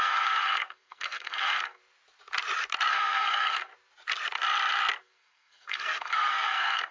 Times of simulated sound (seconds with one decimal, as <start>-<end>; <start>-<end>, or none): 0.0-1.8; 2.9-3.7; 5.0-6.9